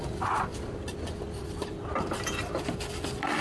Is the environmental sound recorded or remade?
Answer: recorded